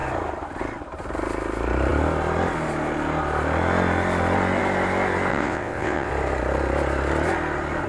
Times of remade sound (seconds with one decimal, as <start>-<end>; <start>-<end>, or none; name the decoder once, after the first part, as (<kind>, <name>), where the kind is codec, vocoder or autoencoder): 5.3-6.1 (vocoder, WaveNeXt)